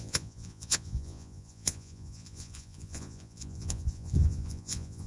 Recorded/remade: remade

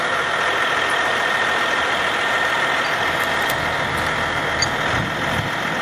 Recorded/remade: recorded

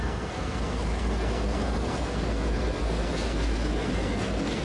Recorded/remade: remade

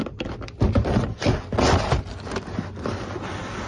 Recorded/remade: recorded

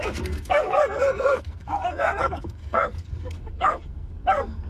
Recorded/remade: remade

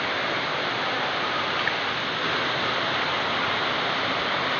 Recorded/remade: recorded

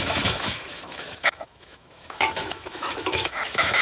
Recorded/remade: remade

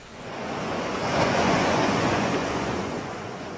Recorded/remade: remade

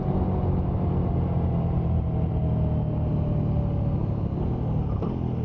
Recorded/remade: recorded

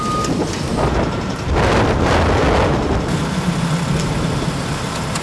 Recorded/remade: recorded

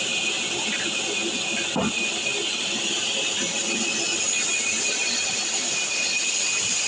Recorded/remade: recorded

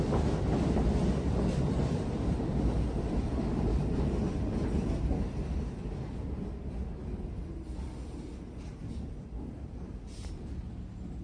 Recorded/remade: recorded